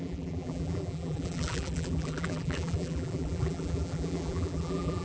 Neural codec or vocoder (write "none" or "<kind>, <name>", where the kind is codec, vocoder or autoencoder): vocoder, BigVGAN v2